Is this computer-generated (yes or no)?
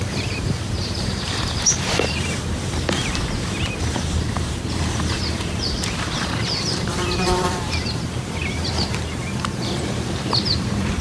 yes